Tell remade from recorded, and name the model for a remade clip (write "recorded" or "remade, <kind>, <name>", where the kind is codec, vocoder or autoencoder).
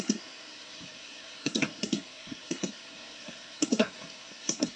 remade, codec, SNAC